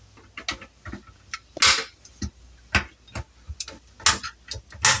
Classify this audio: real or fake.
real